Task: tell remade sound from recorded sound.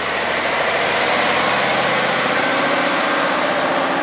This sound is remade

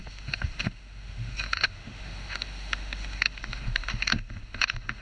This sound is remade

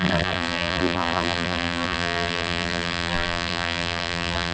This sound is remade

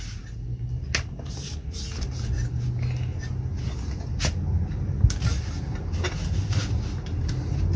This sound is recorded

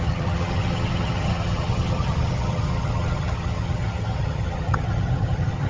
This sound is remade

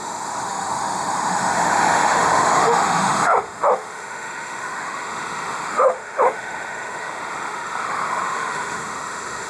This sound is remade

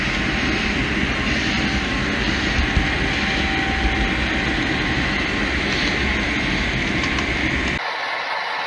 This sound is recorded